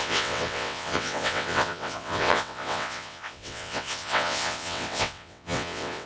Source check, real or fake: fake